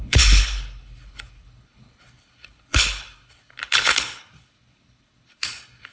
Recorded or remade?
remade